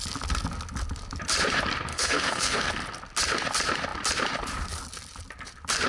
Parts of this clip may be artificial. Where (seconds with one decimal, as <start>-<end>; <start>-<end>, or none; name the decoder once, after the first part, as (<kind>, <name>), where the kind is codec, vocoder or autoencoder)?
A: 1.9-2.7 (codec, SNAC)